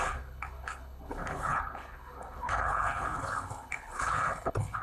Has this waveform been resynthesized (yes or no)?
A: yes